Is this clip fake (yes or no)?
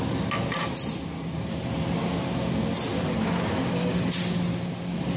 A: no